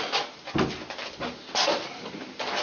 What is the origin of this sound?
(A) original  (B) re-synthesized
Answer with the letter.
A